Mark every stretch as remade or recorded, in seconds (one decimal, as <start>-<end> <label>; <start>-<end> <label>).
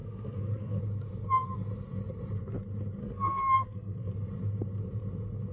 0.0-0.8 remade; 0.8-3.0 recorded; 3.0-4.1 remade; 4.1-5.5 recorded